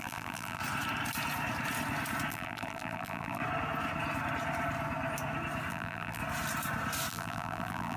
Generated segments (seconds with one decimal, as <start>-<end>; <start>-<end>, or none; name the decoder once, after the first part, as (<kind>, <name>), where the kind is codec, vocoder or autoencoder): 0.0-0.6 (vocoder, BigVGAN v2); 2.3-3.4; 5.7-6.2; 7.1-8.0